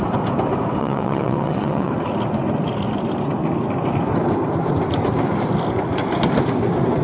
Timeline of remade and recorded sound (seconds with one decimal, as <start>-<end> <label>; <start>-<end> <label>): 0.0-0.8 recorded; 0.8-1.9 remade; 1.9-7.0 recorded